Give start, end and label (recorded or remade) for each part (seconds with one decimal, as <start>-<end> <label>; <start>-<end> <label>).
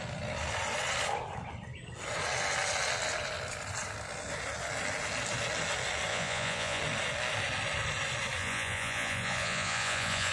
0.0-6.1 recorded; 6.1-6.8 remade; 6.8-8.4 recorded; 8.4-10.3 remade